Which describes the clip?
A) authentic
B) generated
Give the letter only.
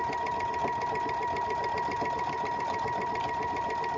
B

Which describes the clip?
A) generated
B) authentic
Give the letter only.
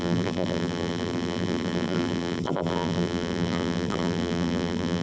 A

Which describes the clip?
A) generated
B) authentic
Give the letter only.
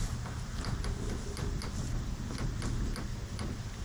B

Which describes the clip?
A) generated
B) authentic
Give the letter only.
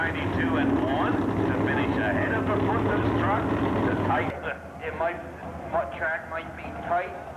B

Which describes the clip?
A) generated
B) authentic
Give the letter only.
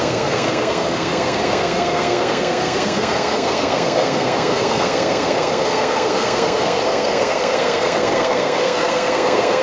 A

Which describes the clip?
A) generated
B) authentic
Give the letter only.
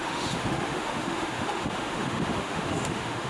A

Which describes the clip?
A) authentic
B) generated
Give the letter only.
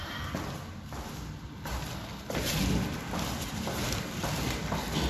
A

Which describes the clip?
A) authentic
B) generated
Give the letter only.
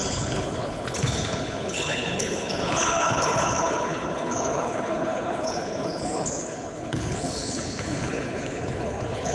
B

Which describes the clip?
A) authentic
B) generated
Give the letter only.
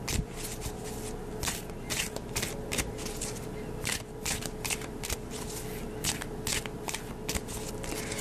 A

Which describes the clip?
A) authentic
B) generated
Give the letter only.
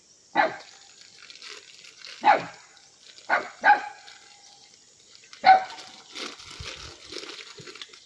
A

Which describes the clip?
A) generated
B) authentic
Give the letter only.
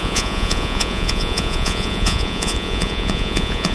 A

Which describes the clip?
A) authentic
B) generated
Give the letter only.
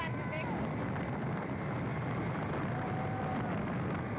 A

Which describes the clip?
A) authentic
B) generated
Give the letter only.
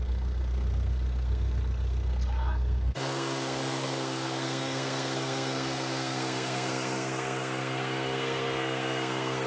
B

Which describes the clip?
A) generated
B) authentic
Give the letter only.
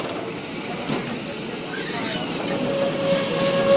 B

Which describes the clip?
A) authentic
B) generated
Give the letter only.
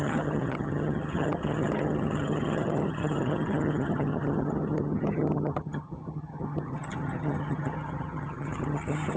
B